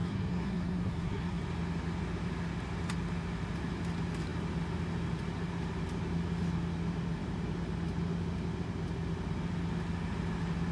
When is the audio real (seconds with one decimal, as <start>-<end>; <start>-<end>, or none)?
1.4-10.7